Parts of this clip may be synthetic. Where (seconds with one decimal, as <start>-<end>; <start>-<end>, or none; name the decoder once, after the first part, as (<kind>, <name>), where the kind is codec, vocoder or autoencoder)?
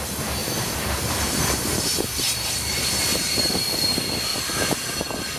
0.4-3.6 (vocoder, BigVGAN v2); 4.3-4.9